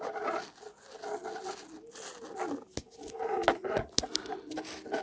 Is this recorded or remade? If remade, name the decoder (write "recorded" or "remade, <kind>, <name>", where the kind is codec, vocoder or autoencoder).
recorded